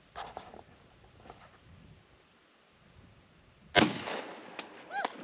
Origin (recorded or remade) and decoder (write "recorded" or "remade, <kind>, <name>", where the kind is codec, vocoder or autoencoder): recorded